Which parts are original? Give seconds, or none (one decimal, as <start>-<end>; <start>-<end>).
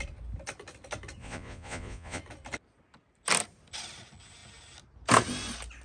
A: 0.0-1.2; 2.2-5.8